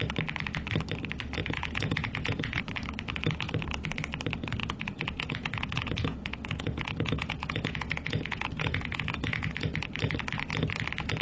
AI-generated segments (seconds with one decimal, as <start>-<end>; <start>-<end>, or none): 1.4-2.6; 4.6-9.5

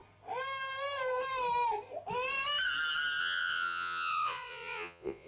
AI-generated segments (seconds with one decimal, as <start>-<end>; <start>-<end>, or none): 3.2-5.3

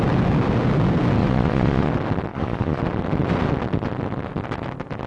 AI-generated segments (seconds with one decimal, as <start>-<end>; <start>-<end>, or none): 1.2-1.9; 2.3-2.8

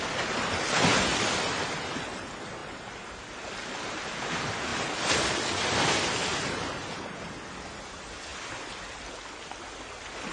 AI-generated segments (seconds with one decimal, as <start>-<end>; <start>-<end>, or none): none

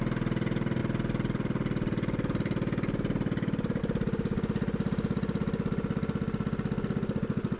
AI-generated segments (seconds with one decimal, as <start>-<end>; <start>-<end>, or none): none

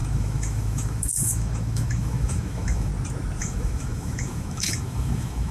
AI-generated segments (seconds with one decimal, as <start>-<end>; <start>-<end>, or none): 0.0-2.9; 3.4-5.5